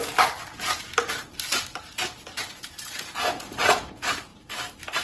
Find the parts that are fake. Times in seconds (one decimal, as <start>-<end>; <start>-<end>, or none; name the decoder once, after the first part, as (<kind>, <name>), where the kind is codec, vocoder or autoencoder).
2.4-4.3 (vocoder, Vocos)